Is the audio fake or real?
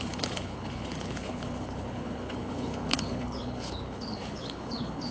fake